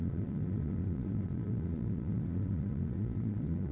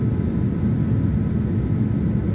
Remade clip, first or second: first